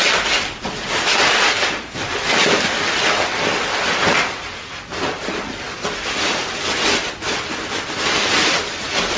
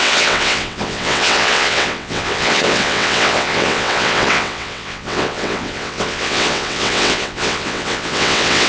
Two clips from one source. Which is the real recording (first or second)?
first